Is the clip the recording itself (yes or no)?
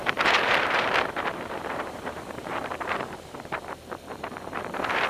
no